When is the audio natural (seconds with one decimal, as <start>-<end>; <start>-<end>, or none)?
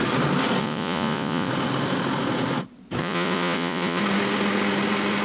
0.0-0.6; 1.5-3.0; 4.0-5.2